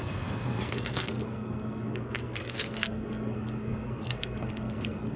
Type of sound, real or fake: fake